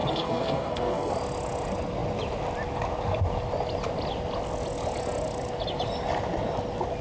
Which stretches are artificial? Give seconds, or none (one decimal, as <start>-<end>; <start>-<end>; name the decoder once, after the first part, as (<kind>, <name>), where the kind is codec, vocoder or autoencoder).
0.0-1.1 (codec, SNAC)